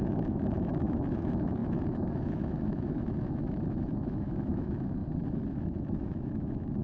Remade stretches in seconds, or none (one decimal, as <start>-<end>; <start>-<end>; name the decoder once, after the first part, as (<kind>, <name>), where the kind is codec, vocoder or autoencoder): 0.0-5.0 (autoencoder, DAC-VAE); 5.5-6.8